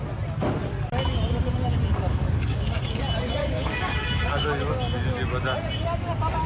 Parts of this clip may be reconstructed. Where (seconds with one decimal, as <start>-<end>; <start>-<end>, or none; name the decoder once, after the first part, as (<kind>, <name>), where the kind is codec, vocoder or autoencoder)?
1.9-3.0 (codec, DAC); 3.4-4.6